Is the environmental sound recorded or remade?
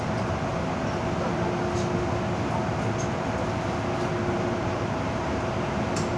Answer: recorded